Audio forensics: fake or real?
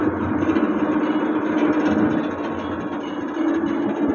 real